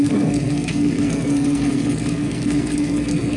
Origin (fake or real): fake